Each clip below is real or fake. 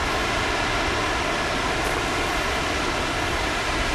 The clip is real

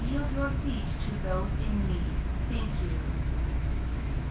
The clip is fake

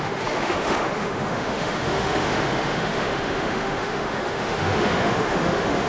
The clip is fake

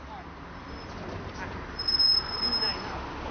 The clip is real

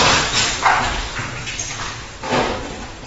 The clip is real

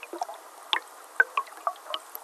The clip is real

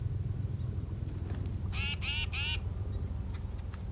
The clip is real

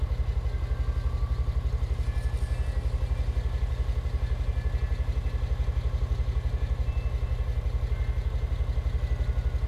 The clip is real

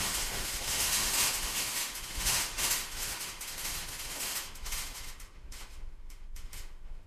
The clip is fake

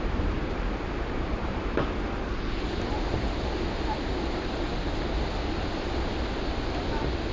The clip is real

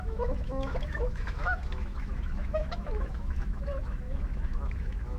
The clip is fake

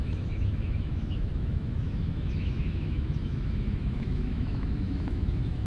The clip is fake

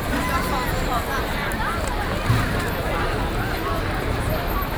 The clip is real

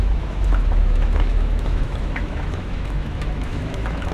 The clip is fake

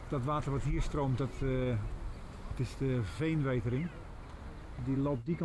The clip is real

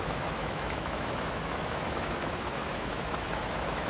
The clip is fake